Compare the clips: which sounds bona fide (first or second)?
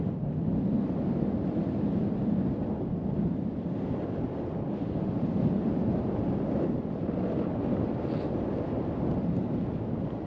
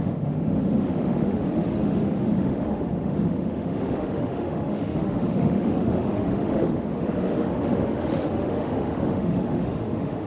first